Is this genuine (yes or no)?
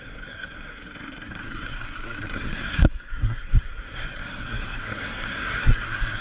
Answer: no